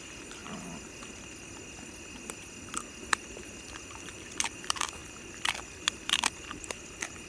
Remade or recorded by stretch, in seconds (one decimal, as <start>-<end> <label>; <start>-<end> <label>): 0.0-0.4 remade; 0.4-3.7 recorded; 3.7-5.0 remade; 5.0-6.7 recorded; 6.7-7.3 remade